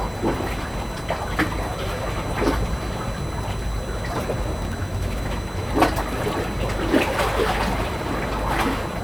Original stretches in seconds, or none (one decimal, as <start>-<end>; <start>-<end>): 0.0-4.8; 5.7-9.0